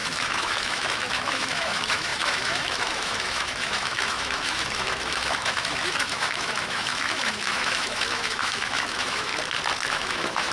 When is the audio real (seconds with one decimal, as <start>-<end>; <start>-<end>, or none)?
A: 9.3-9.9